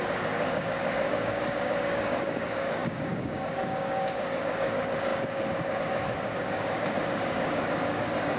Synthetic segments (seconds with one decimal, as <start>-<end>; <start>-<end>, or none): 0.0-8.4

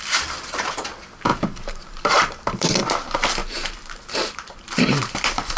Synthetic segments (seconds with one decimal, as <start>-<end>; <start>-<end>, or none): 1.3-2.7; 3.4-5.6

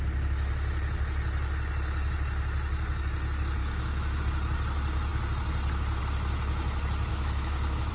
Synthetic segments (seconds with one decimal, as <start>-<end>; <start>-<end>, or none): 3.6-4.2; 7.1-7.9

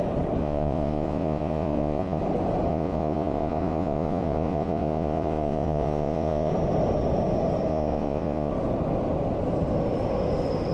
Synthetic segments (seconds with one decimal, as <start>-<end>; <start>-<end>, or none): 0.4-2.2; 2.7-6.5; 7.7-8.5

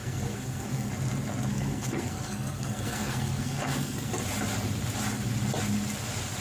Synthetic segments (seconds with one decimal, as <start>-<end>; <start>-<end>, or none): 0.0-0.9; 1.5-4.1